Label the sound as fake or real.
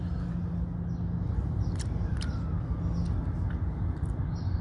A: real